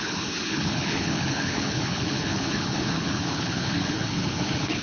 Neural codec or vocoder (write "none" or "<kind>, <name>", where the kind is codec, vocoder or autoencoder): codec, HILCodec